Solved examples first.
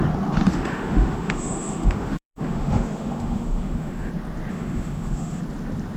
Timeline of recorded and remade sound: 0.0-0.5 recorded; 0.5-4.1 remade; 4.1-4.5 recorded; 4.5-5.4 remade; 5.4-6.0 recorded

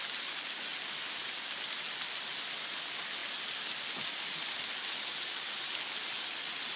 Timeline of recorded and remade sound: 0.0-6.8 recorded

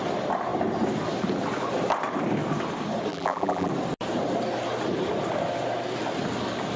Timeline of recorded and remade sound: 0.0-3.1 recorded; 3.1-3.7 remade; 3.7-6.8 recorded

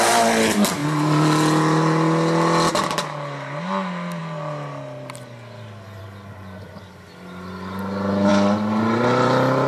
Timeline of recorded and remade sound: 0.0-9.7 recorded

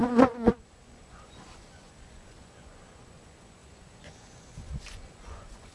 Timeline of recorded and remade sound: 0.0-5.7 remade